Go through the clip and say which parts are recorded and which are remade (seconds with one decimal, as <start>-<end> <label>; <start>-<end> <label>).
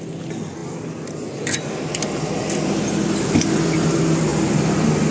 0.0-5.1 recorded